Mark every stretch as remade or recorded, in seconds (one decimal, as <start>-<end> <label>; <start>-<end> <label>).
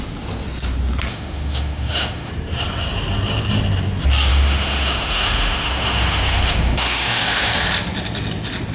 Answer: 0.0-1.1 recorded; 1.1-2.3 remade; 2.3-4.3 recorded; 4.3-7.5 remade; 7.5-8.7 recorded